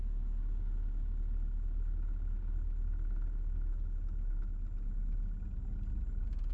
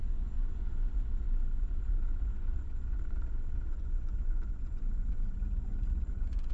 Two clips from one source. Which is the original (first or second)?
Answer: first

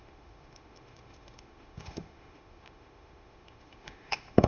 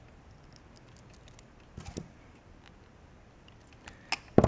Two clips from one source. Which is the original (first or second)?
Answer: second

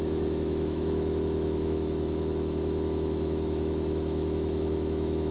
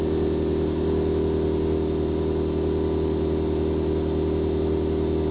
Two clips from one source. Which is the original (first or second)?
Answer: second